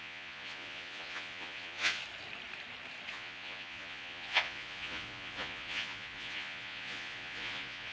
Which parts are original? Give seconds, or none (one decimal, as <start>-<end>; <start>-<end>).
2.0-3.1